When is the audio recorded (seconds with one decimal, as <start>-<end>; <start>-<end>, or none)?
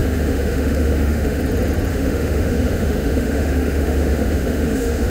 1.4-1.9